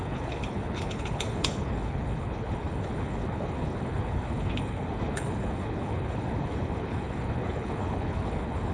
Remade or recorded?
remade